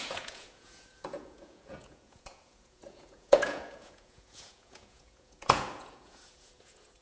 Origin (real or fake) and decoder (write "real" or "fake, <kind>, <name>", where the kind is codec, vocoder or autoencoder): fake, vocoder, Vocos